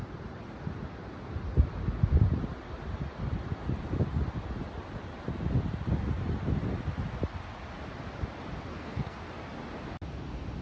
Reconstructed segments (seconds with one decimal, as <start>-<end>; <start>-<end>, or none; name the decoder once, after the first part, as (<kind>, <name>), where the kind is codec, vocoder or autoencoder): 8.7-9.3 (codec, SNAC)